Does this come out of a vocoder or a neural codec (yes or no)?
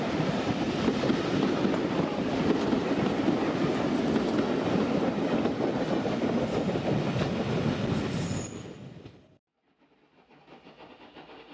no